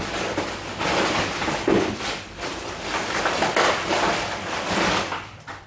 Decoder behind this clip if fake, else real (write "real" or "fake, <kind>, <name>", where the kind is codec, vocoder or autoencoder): real